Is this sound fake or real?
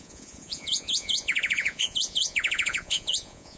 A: fake